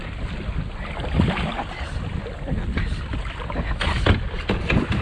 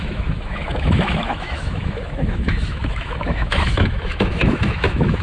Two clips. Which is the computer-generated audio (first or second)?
second